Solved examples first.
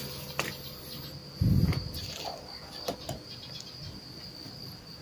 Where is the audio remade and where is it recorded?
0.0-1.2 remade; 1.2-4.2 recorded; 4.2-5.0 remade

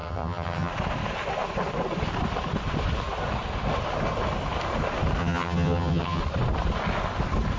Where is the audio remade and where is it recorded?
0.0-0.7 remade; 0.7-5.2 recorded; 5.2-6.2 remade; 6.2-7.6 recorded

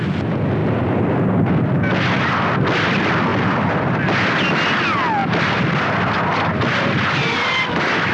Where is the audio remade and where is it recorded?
0.0-5.2 recorded; 5.2-8.1 remade

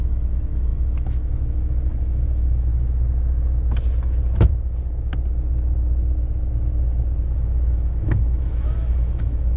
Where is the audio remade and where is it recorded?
0.0-2.7 remade; 2.7-7.7 recorded; 7.7-9.6 remade

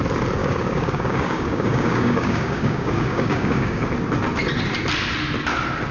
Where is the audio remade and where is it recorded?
0.0-0.4 recorded; 0.4-3.9 remade; 3.9-5.9 recorded

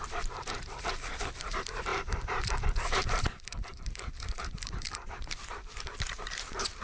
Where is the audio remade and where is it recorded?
0.0-6.8 remade

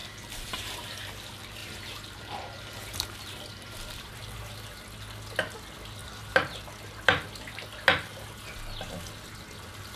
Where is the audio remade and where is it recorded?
0.0-0.8 remade; 0.8-1.6 recorded; 1.6-4.1 remade; 4.1-6.0 recorded; 6.0-6.6 remade; 6.6-10.0 recorded